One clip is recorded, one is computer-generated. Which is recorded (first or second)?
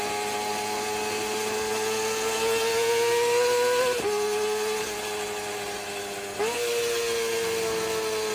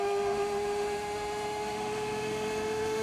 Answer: first